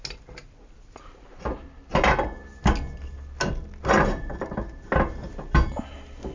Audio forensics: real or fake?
real